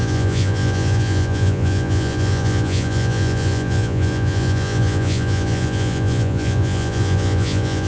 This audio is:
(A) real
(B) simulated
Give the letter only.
B